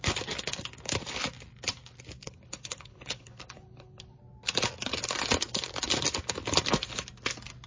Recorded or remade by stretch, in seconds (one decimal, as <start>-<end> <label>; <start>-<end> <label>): 0.0-2.2 recorded; 2.2-4.2 remade; 4.2-7.7 recorded

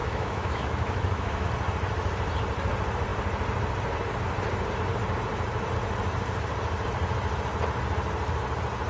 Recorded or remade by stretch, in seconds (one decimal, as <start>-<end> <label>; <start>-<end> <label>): 0.0-1.5 remade; 1.5-8.9 recorded